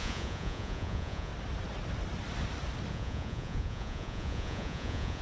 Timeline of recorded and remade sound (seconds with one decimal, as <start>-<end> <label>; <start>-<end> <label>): 0.0-1.3 remade; 1.3-2.9 recorded; 2.9-5.2 remade